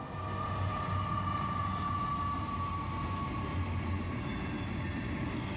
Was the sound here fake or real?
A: real